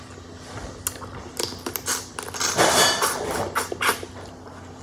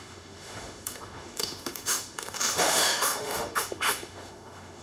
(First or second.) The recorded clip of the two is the first